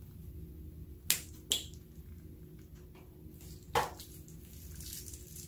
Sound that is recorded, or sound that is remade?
recorded